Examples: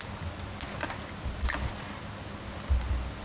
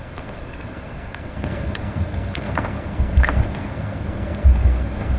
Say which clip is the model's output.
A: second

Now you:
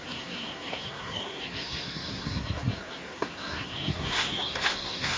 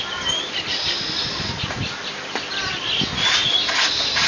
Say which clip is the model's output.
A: first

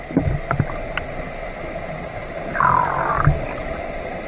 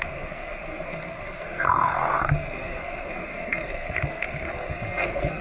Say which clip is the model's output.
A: second